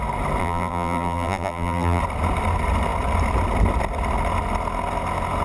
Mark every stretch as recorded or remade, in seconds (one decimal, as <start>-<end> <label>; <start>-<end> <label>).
0.0-0.4 recorded; 0.4-2.0 remade; 2.0-5.4 recorded